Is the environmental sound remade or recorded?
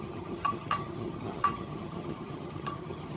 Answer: remade